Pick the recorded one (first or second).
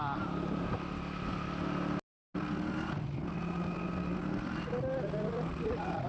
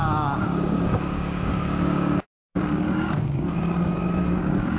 first